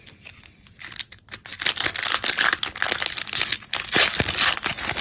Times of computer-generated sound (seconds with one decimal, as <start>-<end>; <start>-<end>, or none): none

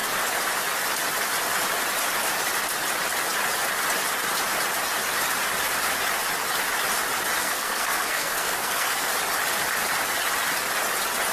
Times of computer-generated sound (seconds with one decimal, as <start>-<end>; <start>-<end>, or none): 7.4-9.1

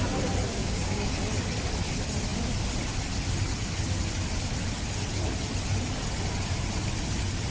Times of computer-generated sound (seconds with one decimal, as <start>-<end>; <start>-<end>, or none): 0.6-1.1

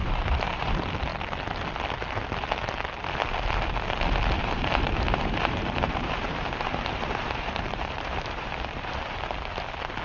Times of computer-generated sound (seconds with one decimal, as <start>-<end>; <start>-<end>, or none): 0.0-0.7; 4.4-9.2

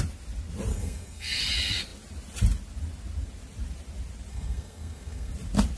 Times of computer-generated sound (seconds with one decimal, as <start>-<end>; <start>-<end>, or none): 0.7-1.4; 4.3-5.3

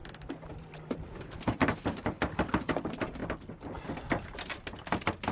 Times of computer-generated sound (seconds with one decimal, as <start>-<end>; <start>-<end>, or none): 0.9-3.2; 4.1-5.3